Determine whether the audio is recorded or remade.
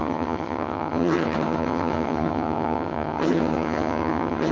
remade